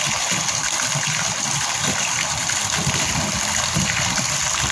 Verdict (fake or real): real